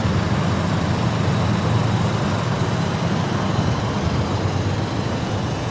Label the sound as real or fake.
real